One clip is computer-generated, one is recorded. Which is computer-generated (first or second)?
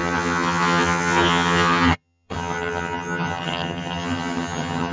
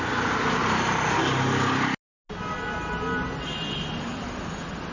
first